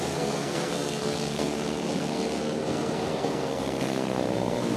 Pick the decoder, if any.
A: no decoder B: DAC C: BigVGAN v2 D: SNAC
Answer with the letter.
D